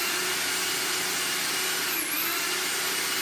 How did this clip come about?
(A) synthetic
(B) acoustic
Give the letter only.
B